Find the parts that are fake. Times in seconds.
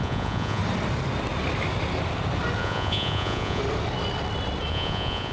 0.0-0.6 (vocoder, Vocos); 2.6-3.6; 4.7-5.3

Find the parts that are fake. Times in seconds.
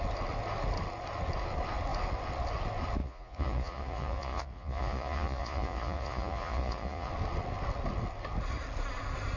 3.0-7.1 (vocoder, Vocos)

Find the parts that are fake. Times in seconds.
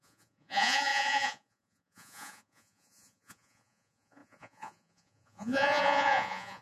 0.0-6.6 (vocoder, Vocos)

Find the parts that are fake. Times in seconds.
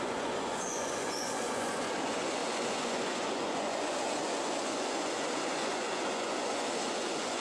0.0-7.4 (vocoder, Vocos)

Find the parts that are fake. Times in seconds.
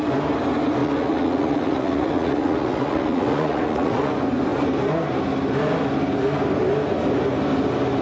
0.8-4.1 (vocoder, Vocos)